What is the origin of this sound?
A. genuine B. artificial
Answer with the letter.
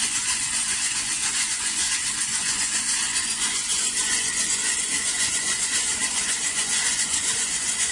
B